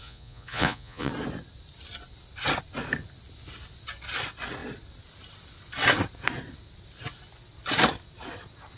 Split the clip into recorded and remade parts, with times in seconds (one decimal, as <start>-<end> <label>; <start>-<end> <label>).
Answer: 0.0-1.1 remade; 1.1-8.8 recorded